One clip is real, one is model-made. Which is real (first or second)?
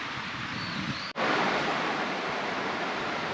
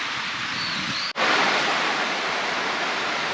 second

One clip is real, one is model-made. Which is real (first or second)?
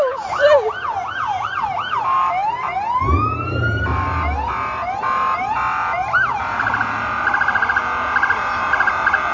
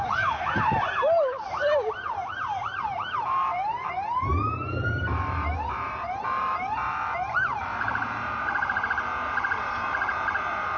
first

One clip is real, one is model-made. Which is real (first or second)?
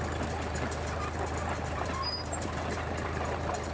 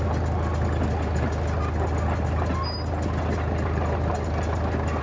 second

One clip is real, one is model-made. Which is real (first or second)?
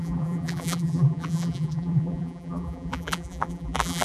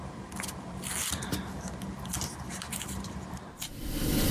second